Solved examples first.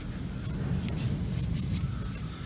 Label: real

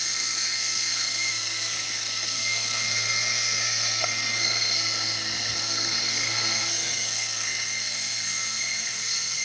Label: fake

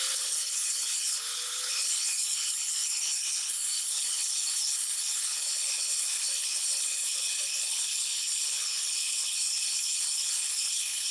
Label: fake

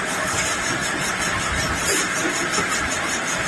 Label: fake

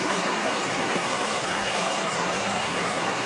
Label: fake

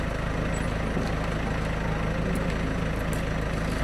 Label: real